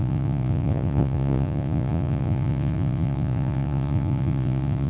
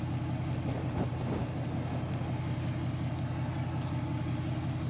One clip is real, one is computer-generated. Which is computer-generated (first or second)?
first